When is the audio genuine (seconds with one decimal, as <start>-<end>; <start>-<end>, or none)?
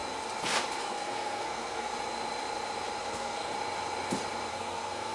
0.0-0.8; 1.9-3.0; 3.5-4.5